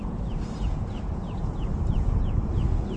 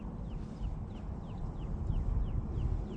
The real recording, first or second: second